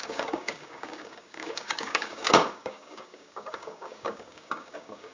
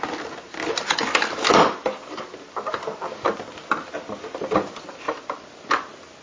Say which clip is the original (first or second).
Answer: second